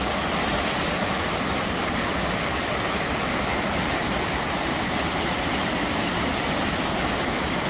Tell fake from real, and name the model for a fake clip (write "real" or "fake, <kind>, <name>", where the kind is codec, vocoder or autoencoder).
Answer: real